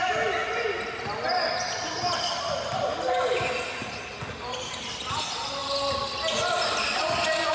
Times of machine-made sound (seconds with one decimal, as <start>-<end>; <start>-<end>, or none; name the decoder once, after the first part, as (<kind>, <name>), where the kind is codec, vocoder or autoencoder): none